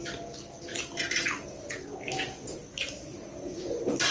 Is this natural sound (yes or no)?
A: yes